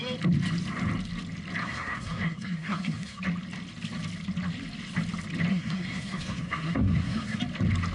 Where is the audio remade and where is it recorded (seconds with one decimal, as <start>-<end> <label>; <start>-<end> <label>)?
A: 0.0-1.6 recorded; 1.6-3.2 remade; 3.2-5.5 recorded; 5.5-7.4 remade; 7.4-7.9 recorded